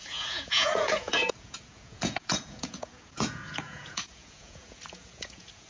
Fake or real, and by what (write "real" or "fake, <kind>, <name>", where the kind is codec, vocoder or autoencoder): fake, vocoder, Vocos